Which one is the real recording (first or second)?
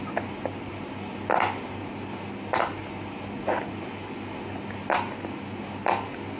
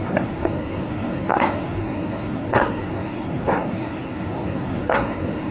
first